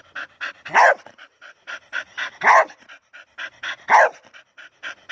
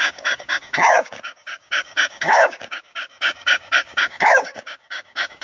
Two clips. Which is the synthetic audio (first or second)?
second